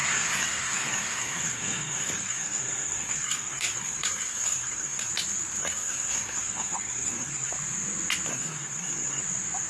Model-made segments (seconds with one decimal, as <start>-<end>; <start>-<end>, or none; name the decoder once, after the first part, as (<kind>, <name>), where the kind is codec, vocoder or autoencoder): 0.0-5.1 (codec, SNAC); 5.6-7.5; 8.3-9.2